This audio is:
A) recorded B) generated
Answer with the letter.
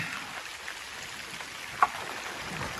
A